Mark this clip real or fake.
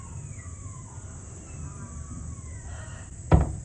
real